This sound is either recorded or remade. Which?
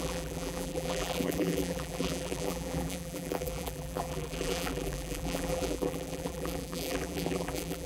remade